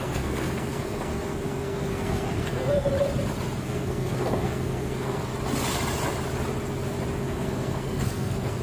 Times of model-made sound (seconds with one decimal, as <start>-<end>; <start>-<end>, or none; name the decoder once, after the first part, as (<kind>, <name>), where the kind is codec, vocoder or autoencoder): 0.0-2.9 (codec, SNAC); 3.6-5.3; 7.2-8.6